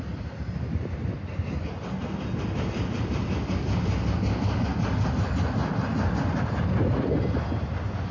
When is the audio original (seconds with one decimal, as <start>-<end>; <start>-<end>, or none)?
0.0-8.1